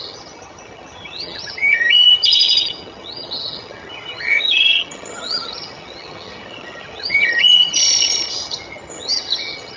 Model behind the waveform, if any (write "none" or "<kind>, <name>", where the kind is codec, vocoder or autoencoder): vocoder, HiFi-GAN